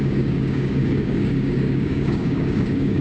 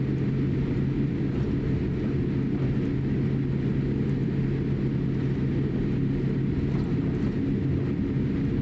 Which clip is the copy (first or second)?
first